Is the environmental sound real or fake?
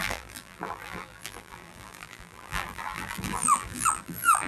fake